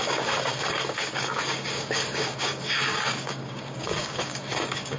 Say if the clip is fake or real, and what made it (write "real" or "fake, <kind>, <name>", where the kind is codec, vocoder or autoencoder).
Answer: fake, codec, DAC